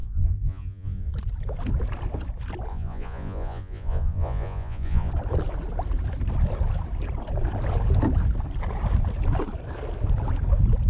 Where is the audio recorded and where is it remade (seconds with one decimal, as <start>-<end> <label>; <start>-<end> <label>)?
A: 0.0-1.1 remade; 1.1-2.7 recorded; 2.7-5.1 remade; 5.1-10.9 recorded